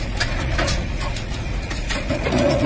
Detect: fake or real fake